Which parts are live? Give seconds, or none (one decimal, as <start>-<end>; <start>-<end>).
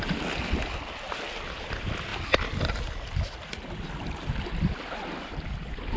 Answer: 0.0-6.0